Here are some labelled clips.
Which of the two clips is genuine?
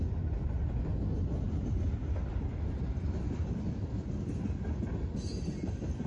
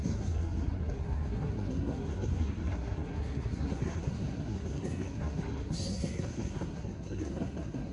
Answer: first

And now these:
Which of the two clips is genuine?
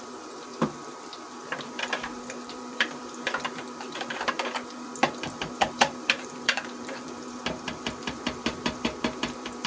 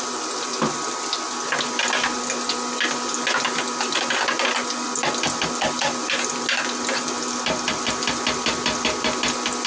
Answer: second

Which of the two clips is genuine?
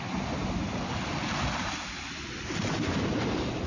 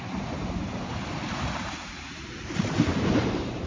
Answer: first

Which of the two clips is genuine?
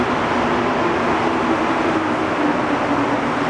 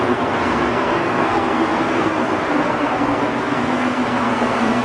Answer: first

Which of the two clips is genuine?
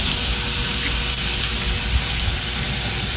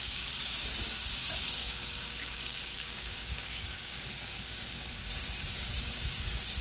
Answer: first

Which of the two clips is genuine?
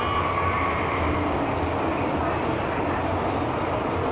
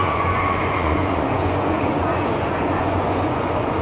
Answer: first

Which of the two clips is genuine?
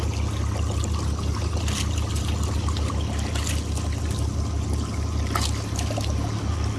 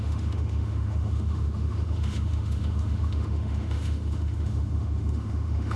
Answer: first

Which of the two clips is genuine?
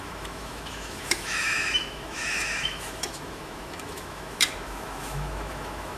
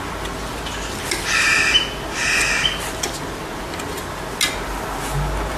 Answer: second